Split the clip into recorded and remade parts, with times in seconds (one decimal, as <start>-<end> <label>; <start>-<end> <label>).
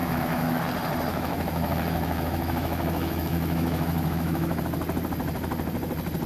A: 0.0-0.6 remade; 0.6-1.1 recorded; 1.1-4.6 remade; 4.6-6.3 recorded